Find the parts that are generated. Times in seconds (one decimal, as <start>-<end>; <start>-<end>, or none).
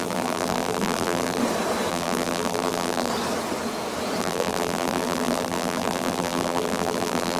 0.0-1.4; 1.9-3.1; 4.2-7.4